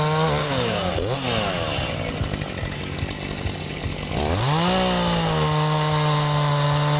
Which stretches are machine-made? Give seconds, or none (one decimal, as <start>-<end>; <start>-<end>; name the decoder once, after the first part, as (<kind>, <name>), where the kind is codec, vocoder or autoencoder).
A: 0.4-0.9 (codec, DAC)